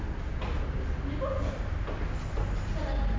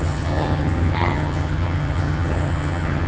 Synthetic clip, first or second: second